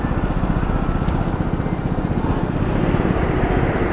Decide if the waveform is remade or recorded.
recorded